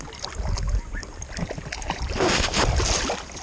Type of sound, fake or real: real